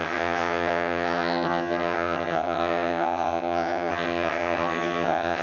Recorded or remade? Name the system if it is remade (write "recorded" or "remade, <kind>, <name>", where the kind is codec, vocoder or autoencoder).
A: remade, vocoder, HiFi-GAN